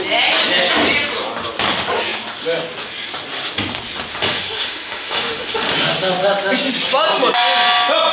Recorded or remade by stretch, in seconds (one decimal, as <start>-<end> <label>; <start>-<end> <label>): 0.0-4.1 recorded; 4.1-5.7 remade; 5.7-8.1 recorded